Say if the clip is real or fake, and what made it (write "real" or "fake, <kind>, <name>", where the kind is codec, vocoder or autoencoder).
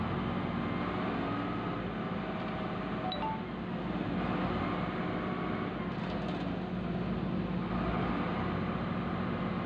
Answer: real